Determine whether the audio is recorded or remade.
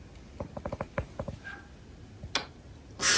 recorded